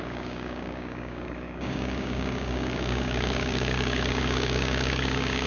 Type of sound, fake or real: fake